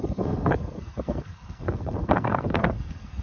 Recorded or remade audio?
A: remade